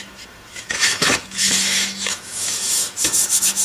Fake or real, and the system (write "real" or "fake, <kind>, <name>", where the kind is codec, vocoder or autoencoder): fake, autoencoder, DAC-VAE